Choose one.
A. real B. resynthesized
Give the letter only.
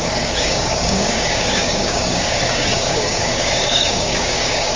B